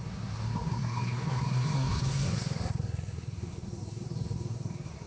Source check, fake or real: fake